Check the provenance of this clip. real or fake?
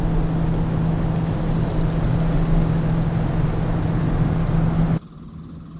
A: real